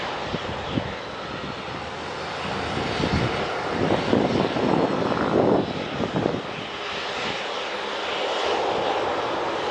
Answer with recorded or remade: recorded